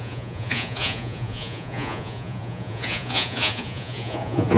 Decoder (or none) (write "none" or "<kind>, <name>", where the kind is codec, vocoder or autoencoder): vocoder, Vocos